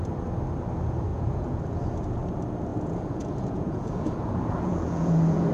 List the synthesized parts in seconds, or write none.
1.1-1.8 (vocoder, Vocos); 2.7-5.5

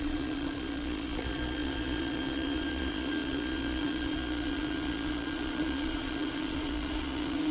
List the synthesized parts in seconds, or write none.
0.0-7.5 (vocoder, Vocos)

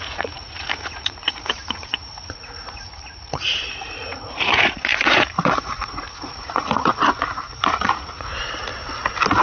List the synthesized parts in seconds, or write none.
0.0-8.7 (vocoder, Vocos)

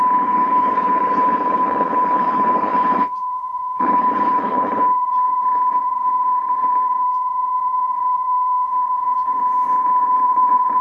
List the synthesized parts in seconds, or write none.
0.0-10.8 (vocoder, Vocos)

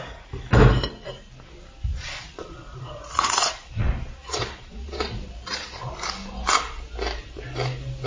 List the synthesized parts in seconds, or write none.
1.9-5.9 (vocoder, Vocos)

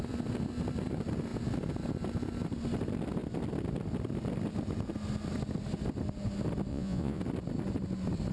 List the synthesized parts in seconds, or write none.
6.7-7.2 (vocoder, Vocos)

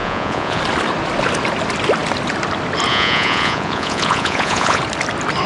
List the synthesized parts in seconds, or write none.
0.0-0.6 (vocoder, Vocos); 2.9-4.8